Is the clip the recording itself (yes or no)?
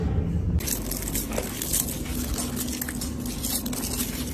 yes